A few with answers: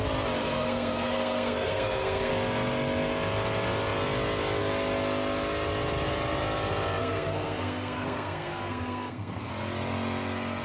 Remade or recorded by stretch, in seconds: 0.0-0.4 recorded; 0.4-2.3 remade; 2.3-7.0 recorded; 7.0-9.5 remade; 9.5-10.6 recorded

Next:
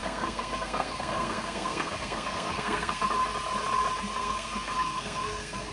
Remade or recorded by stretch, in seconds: 0.0-3.0 remade; 3.0-4.2 recorded; 4.2-5.7 remade

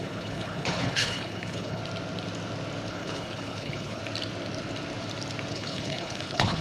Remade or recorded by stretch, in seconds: 0.0-1.8 remade; 1.8-2.9 recorded; 2.9-4.0 remade; 4.0-5.5 recorded; 5.5-6.6 remade

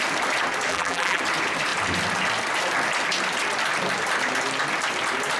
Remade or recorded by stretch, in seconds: 0.0-0.7 recorded; 0.7-1.2 remade; 1.2-5.4 recorded